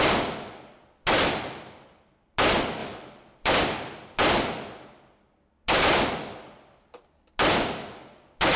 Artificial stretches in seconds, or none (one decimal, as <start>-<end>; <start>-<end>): 2.8-3.5